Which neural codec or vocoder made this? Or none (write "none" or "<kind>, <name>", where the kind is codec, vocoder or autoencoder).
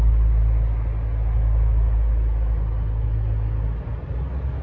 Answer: none